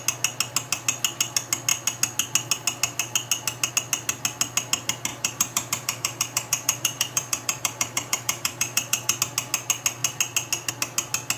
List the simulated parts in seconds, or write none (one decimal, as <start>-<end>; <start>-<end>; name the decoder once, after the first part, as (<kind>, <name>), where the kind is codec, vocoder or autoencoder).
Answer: 5.1-9.2 (vocoder, BigVGAN v2)

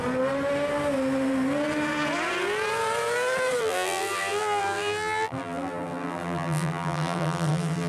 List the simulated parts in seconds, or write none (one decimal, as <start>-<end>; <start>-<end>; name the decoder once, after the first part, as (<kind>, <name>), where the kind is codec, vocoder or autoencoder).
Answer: 3.6-7.9 (vocoder, BigVGAN v2)

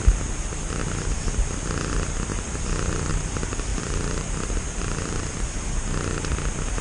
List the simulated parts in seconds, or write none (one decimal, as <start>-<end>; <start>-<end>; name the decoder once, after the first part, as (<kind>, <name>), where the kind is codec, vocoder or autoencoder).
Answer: 2.3-3.1 (vocoder, BigVGAN v2); 3.7-5.2

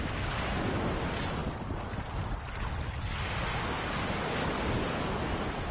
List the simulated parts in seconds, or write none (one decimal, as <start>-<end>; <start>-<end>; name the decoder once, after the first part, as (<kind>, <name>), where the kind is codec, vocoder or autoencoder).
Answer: none

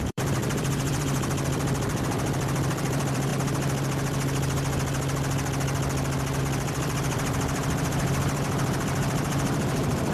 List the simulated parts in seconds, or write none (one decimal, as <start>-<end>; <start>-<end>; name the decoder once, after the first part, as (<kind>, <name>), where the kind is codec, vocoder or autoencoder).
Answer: 0.0-3.3 (vocoder, BigVGAN v2); 6.4-10.1

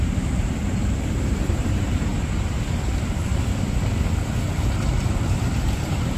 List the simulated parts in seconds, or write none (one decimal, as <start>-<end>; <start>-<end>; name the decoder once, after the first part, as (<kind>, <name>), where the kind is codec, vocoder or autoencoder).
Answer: 0.0-2.1 (vocoder, BigVGAN v2); 5.4-6.2

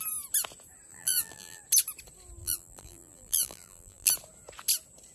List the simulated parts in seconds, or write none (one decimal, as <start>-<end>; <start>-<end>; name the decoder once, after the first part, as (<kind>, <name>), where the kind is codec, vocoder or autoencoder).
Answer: 0.9-1.6 (vocoder, BigVGAN v2); 2.4-4.1